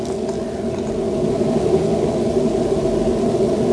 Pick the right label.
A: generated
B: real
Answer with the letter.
B